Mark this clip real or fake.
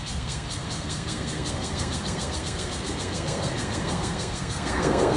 fake